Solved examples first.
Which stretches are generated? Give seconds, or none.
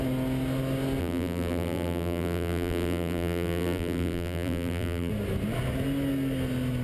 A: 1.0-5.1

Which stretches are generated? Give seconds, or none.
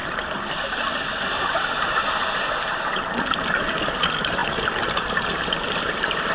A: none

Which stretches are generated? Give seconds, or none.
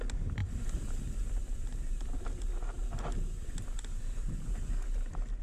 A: 0.4-2.3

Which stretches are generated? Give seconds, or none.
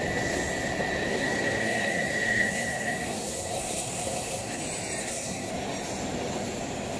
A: 1.1-4.6; 5.0-5.5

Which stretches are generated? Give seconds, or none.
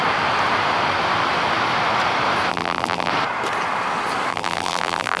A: 2.5-3.1; 4.3-5.2